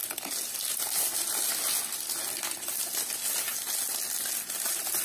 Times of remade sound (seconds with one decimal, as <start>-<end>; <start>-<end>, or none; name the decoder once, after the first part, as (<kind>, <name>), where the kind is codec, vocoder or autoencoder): none